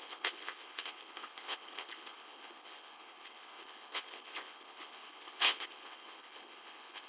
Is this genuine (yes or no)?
no